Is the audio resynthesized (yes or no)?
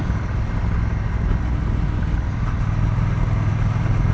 no